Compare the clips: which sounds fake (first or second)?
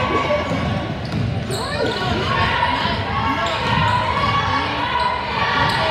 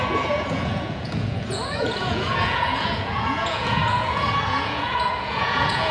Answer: second